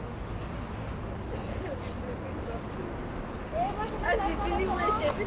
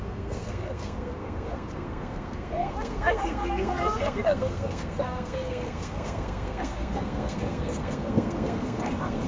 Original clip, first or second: first